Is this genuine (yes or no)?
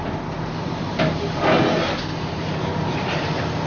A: yes